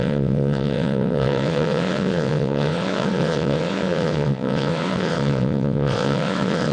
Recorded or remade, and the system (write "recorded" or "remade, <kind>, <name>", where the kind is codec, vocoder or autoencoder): remade, vocoder, WaveNeXt